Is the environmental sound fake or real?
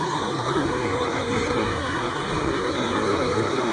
fake